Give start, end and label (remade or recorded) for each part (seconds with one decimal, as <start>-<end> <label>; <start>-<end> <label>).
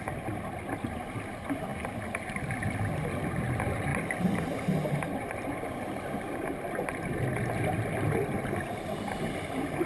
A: 0.0-9.9 recorded